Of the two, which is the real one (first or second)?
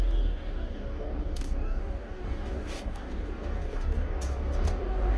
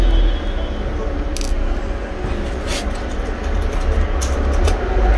second